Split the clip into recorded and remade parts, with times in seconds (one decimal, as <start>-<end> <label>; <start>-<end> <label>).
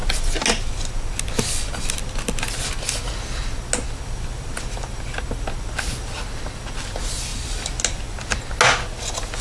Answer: 0.0-9.4 recorded